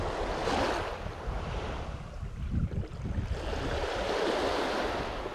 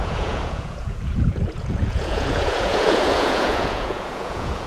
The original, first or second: first